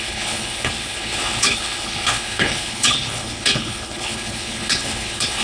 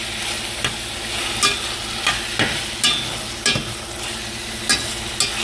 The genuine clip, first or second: second